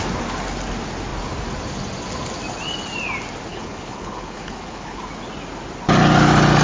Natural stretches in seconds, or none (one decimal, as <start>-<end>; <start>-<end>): 0.0-3.5; 5.0-6.6